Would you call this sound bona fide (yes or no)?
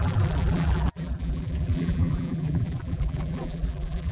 no